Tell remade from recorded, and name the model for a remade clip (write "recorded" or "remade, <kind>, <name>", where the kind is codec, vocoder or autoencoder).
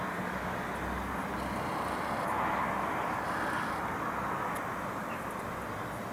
recorded